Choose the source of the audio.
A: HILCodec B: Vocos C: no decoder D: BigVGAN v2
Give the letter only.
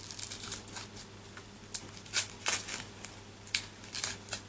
C